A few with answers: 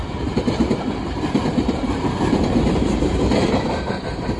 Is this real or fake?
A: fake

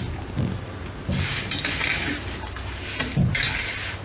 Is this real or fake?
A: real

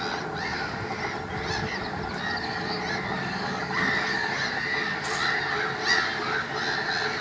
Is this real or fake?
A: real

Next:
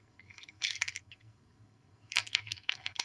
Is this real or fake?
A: fake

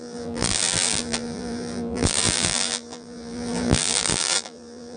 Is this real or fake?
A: fake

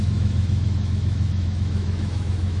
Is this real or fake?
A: fake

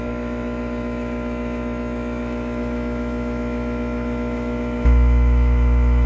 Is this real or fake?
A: fake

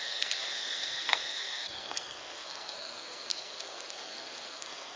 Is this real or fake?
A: fake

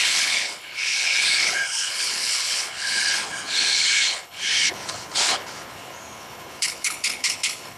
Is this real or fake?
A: fake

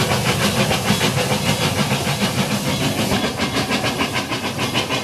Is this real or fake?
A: real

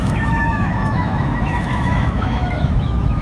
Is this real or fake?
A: fake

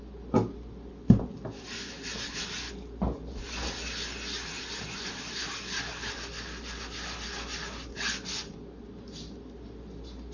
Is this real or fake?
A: real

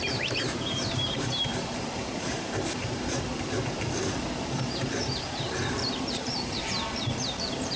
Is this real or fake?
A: fake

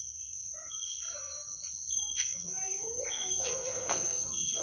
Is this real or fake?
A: fake